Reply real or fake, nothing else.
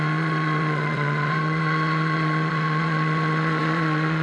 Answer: fake